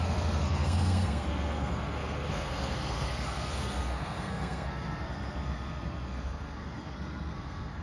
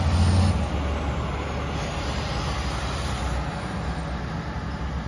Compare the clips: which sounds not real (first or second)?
first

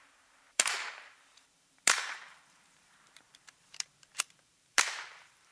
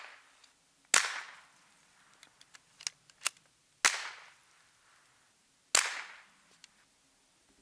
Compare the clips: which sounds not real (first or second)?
first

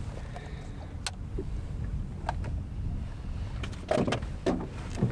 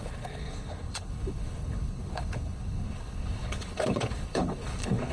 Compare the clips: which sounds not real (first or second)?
second